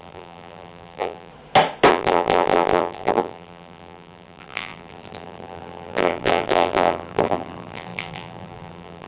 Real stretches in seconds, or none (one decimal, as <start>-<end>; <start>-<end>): 1.3-1.9